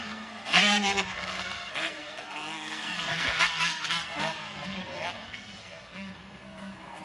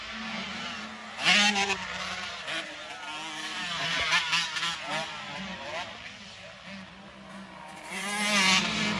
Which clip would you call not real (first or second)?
first